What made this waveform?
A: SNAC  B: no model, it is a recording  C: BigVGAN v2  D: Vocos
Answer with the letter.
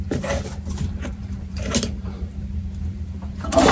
C